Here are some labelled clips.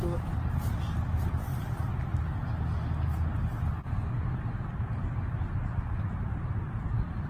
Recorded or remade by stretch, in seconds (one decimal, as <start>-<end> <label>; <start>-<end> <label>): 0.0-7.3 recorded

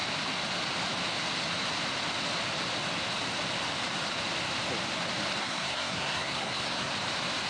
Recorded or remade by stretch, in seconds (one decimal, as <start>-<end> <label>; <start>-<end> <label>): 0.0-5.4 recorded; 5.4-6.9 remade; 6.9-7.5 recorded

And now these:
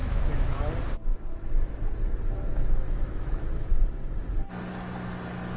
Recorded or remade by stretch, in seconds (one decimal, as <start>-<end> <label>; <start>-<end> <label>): 0.0-0.7 remade; 0.7-2.5 recorded; 2.5-3.7 remade; 3.7-5.6 recorded

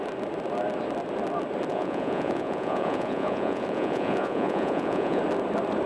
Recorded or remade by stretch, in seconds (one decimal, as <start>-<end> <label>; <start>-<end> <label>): 0.0-1.7 recorded; 1.7-5.2 remade; 5.2-5.9 recorded

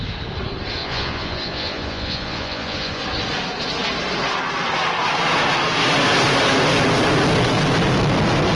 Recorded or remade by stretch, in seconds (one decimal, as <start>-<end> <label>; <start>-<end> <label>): 0.0-0.8 recorded; 0.8-3.0 remade; 3.0-8.5 recorded

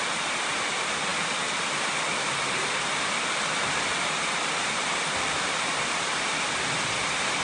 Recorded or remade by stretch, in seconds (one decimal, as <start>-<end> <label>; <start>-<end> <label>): 0.0-7.4 recorded